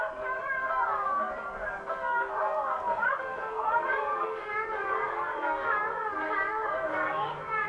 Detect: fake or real fake